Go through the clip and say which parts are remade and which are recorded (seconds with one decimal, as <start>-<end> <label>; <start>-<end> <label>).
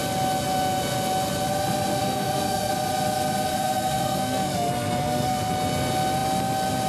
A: 0.0-1.9 recorded; 1.9-2.7 remade; 2.7-3.5 recorded; 3.5-5.5 remade; 5.5-6.9 recorded